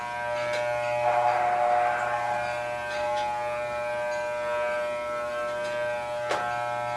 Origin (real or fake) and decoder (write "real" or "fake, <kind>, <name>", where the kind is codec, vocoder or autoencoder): real